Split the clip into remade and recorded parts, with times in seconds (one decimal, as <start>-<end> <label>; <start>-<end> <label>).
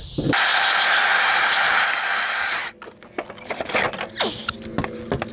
0.0-5.3 recorded